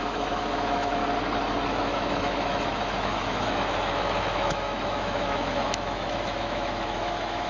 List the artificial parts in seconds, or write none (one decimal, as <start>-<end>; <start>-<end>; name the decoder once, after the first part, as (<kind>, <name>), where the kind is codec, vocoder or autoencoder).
0.0-1.0 (autoencoder, DAC-VAE); 1.7-7.5